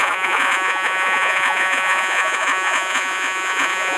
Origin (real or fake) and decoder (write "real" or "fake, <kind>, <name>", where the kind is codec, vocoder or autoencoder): fake, vocoder, Vocos